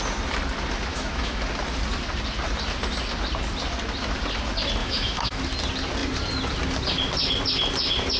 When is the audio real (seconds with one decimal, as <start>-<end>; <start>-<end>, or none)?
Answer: 0.0-0.9; 1.4-4.8; 5.4-8.2